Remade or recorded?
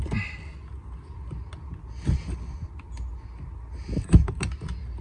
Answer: recorded